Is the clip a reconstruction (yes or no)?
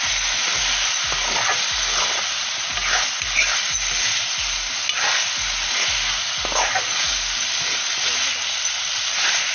no